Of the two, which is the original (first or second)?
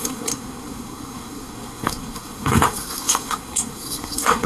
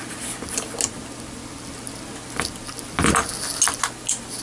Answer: second